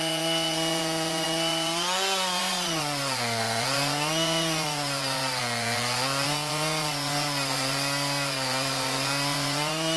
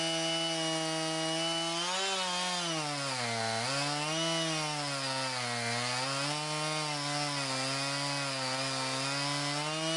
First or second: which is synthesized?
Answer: first